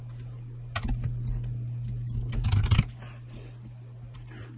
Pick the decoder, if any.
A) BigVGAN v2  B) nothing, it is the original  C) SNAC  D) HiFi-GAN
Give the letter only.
B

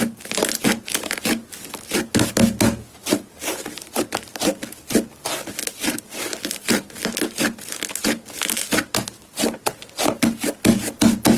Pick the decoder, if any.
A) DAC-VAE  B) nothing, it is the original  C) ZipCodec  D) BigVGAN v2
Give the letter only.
B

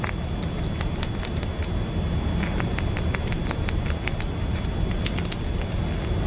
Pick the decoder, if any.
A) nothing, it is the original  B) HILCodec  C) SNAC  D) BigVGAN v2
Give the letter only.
A